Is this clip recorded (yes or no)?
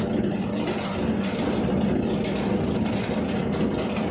yes